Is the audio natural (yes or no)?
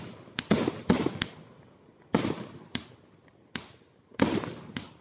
yes